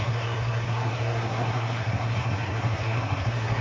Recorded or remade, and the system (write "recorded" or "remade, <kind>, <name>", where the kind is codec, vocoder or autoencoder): remade, codec, SNAC